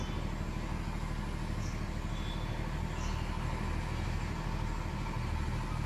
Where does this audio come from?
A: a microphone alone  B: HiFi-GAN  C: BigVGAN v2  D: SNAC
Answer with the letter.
A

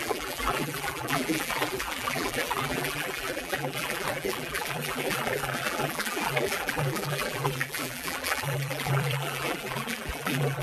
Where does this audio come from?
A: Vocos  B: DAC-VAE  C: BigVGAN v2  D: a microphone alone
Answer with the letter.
C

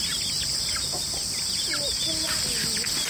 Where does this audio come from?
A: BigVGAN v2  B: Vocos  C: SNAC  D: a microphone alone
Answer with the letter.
D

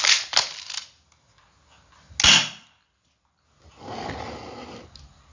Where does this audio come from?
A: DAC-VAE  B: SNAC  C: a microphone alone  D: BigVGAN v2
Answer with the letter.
C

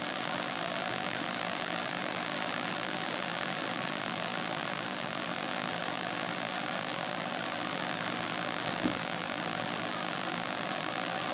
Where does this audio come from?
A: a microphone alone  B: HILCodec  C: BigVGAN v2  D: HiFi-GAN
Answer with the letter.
C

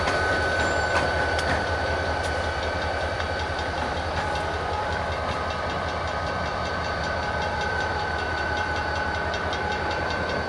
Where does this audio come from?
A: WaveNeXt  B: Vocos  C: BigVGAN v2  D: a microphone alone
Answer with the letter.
C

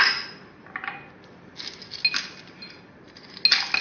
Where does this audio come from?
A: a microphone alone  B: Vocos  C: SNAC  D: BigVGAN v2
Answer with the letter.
A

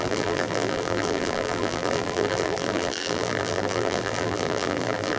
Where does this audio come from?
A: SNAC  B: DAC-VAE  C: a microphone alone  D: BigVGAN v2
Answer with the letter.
D